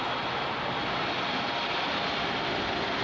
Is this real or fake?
real